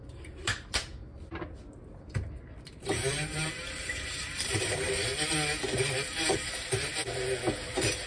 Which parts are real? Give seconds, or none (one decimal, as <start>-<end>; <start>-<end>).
0.9-2.6; 5.1-5.9; 7.0-8.1